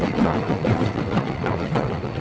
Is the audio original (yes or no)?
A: no